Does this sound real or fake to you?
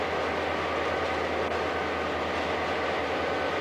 real